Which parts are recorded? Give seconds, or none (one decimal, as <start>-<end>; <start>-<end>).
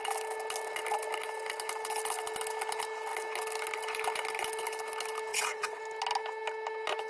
0.0-5.3; 5.8-7.1